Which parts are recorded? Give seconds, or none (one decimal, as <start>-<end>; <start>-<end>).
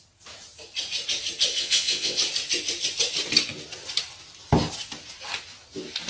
0.0-1.5; 2.2-6.1